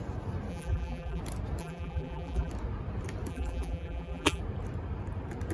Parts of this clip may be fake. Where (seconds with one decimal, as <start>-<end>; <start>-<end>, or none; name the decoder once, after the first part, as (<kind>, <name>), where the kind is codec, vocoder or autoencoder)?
0.5-1.2 (vocoder, BigVGAN v2); 1.6-2.5; 3.3-4.4